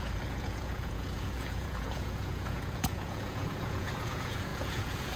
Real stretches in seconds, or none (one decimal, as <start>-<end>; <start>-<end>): none